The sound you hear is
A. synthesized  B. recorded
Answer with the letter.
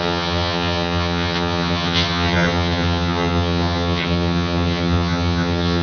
A